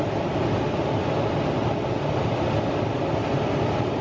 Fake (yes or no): no